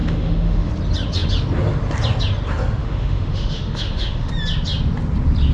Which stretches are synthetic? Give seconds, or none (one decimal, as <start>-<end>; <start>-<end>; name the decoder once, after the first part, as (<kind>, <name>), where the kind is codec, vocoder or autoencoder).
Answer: 0.0-0.7 (autoencoder, DAC-VAE); 2.8-4.3